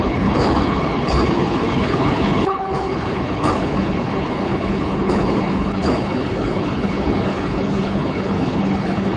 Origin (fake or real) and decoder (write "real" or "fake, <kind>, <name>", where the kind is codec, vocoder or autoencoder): fake, codec, HILCodec